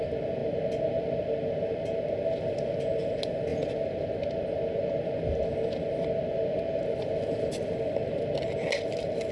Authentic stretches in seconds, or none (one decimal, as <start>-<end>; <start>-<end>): 0.0-9.3